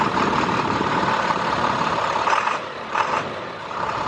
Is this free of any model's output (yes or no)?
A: no